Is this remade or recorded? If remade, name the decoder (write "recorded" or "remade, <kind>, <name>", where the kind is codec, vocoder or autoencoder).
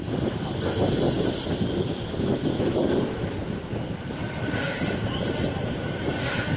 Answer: recorded